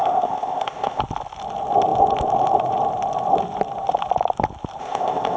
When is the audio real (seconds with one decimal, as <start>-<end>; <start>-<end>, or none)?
1.0-4.8